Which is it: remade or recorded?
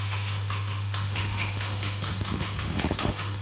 remade